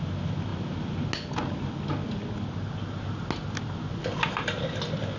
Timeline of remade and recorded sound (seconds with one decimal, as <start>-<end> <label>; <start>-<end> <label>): 0.0-5.2 recorded